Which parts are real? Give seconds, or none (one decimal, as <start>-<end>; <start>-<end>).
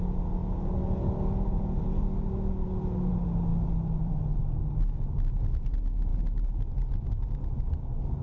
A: 0.0-3.5; 4.1-8.2